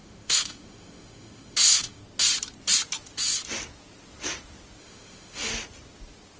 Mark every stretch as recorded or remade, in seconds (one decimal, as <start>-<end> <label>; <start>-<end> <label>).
0.0-2.0 remade; 2.0-4.8 recorded; 4.8-5.5 remade; 5.5-6.4 recorded